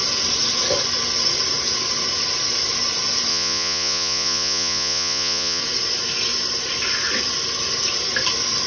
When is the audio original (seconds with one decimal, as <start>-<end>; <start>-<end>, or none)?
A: 0.0-3.3; 5.6-8.7